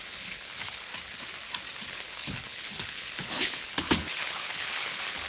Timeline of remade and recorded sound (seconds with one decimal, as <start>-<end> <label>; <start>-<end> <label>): 0.0-0.9 remade; 0.9-1.9 recorded; 1.9-5.3 remade